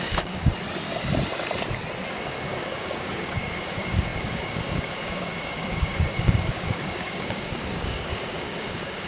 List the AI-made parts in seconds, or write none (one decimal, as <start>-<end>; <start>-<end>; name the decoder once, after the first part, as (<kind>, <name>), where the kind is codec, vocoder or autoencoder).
0.0-0.5 (codec, DAC); 2.1-9.1